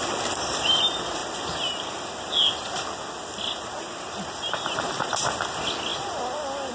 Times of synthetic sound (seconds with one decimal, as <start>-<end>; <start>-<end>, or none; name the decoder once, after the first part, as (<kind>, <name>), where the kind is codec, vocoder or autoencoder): 5.9-6.7 (vocoder, BigVGAN v2)